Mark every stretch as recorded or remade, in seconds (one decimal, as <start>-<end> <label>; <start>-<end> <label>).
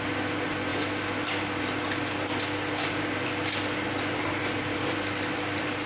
0.0-5.9 recorded